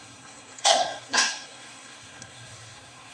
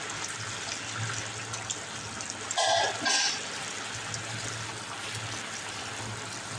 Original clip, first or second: second